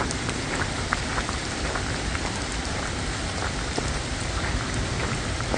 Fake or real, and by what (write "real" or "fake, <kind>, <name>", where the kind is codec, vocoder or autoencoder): fake, vocoder, BigVGAN v2